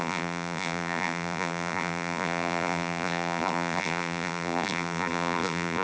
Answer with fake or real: fake